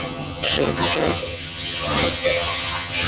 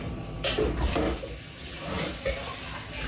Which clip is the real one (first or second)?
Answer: second